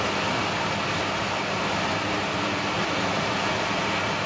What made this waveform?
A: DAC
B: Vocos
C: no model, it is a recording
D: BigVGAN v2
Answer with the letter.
C